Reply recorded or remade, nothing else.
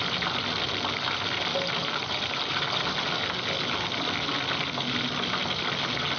recorded